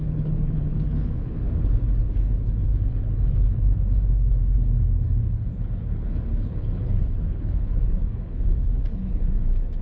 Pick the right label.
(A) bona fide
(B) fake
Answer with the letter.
B